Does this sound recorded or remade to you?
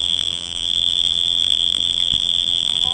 remade